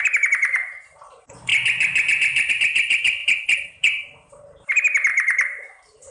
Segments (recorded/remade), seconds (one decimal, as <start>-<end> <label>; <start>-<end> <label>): 0.0-1.5 remade; 1.5-2.5 recorded; 2.5-6.1 remade

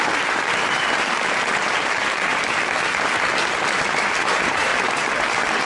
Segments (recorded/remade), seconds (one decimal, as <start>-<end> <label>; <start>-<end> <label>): 0.0-2.3 remade; 2.3-4.2 recorded; 4.2-4.7 remade; 4.7-5.7 recorded

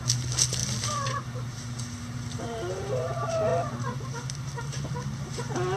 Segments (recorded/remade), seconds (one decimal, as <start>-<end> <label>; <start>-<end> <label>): 0.0-5.8 recorded

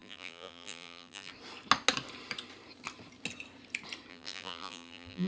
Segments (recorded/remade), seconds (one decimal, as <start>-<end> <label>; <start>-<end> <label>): 0.0-1.3 remade; 1.3-4.1 recorded; 4.1-5.3 remade